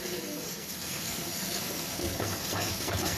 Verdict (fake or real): fake